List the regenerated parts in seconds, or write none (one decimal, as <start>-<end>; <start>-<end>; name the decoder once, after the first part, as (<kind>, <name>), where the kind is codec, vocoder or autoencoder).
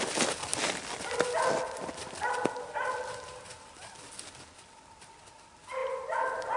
none